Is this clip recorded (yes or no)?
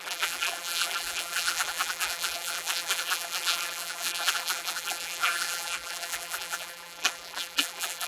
no